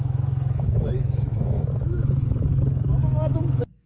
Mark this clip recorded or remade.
remade